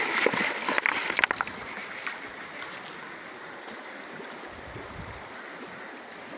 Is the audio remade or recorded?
recorded